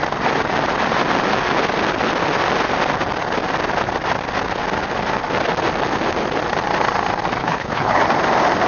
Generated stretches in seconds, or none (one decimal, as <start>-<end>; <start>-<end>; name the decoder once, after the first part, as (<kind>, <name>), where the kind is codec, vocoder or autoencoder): 7.4-8.0 (codec, HILCodec)

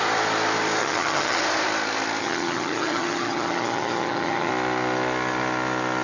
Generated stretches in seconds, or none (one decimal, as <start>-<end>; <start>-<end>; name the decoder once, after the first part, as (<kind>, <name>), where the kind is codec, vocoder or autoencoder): 0.8-1.4 (vocoder, HiFi-GAN); 2.2-4.5

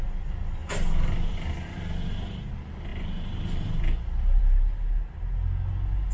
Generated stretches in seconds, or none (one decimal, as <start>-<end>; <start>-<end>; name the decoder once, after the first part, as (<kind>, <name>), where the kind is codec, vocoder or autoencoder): 2.9-4.4 (vocoder, BigVGAN v2)

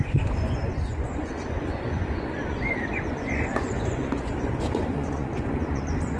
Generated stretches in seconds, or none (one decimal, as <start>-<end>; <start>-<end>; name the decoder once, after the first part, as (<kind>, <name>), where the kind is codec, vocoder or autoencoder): 0.0-6.2 (vocoder, Vocos)

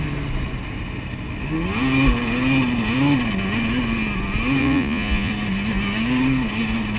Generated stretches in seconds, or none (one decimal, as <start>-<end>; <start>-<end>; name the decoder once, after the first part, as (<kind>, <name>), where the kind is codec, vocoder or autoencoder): 4.6-5.3 (vocoder, Vocos)

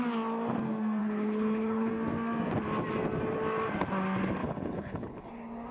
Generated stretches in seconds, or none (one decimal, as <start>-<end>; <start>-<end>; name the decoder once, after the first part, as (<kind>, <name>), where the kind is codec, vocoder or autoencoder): 1.0-1.9 (codec, HILCodec); 4.4-5.3

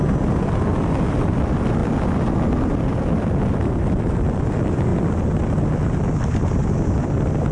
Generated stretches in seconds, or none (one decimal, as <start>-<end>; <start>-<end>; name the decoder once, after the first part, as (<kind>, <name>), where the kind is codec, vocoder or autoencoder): 0.0-0.7 (vocoder, BigVGAN v2); 1.3-1.8; 2.6-4.9; 6.1-7.5

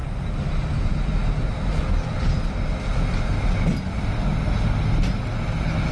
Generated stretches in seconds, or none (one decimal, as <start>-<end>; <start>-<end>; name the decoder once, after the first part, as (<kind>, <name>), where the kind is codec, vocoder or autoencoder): none